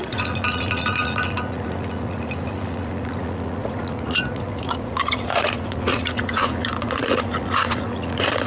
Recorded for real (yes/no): no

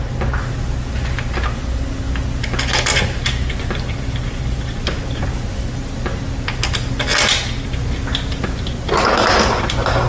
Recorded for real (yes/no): yes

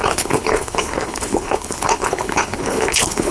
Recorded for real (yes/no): no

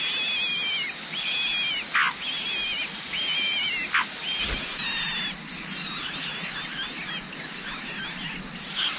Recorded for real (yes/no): yes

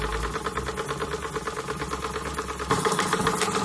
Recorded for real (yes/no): yes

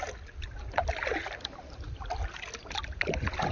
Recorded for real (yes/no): yes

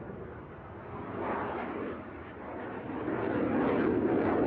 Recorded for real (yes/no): yes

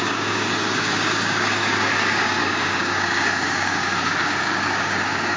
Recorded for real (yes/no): no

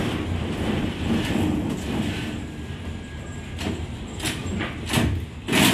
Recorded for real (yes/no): no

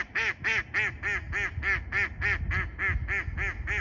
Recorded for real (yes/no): yes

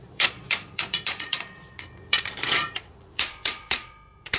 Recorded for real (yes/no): no